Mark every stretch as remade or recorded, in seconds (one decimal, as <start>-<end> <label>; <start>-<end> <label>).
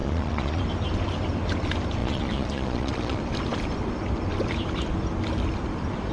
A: 0.0-0.6 remade; 0.6-2.0 recorded; 2.0-3.2 remade; 3.2-6.1 recorded